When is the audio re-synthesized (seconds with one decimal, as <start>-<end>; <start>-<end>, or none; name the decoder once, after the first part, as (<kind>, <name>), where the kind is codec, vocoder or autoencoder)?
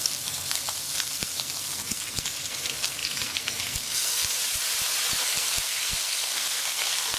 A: 0.0-4.4 (codec, SNAC); 5.2-7.2